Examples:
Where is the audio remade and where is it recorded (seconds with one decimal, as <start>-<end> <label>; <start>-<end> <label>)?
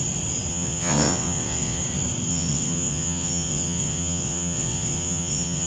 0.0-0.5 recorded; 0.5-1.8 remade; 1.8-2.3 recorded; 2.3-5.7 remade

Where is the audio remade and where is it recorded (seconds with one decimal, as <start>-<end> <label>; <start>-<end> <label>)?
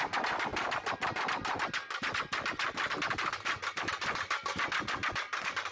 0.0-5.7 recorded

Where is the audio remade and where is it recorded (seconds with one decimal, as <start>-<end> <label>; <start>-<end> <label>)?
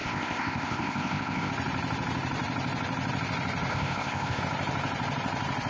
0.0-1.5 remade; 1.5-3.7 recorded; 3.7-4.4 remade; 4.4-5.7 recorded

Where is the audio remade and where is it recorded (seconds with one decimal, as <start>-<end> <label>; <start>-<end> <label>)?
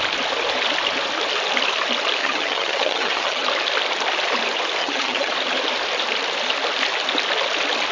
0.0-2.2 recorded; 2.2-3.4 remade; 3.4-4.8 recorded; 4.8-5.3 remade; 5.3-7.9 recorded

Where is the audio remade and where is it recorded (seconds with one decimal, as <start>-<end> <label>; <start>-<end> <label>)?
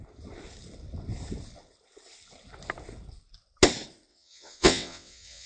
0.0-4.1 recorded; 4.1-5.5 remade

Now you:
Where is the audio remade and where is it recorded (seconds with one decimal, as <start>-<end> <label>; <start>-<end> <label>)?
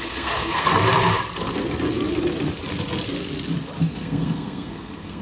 0.0-0.7 remade; 0.7-3.8 recorded; 3.8-5.2 remade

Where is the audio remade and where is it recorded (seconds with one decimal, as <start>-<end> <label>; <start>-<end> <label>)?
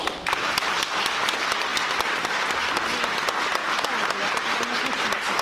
0.0-5.4 recorded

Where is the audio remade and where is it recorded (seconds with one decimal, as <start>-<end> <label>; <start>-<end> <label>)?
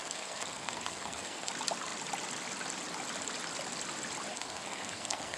0.0-1.5 remade; 1.5-4.3 recorded; 4.3-5.4 remade